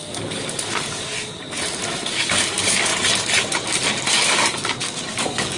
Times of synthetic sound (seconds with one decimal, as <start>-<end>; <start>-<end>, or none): 0.0-1.4; 2.1-2.9; 4.1-5.6